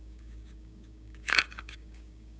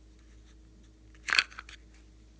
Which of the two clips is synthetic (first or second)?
first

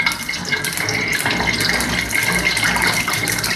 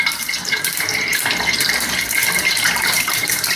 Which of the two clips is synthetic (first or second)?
second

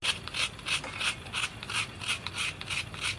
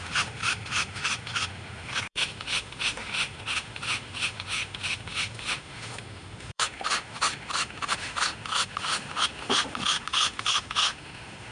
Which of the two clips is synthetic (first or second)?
second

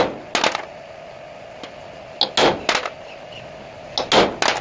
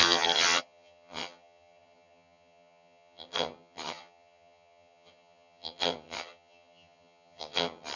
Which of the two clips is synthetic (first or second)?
second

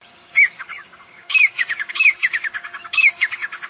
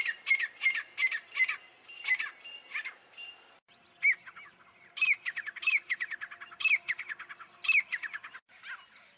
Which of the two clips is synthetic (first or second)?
first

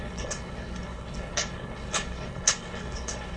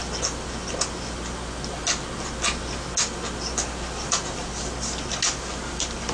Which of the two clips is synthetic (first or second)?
first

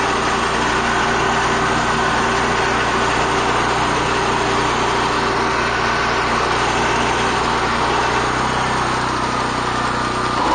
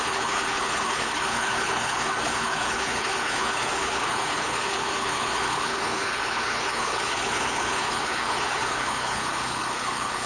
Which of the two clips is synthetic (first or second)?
second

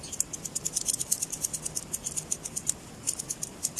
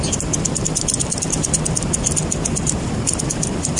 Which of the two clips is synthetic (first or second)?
second